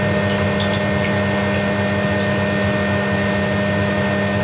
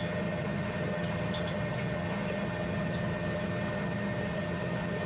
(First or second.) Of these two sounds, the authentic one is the first